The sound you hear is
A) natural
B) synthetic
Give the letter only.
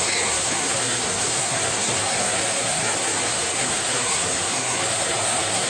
B